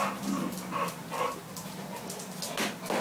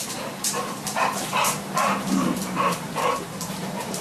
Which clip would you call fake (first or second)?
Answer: second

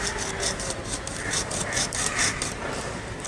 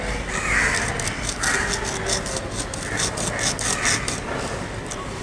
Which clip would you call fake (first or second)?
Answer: first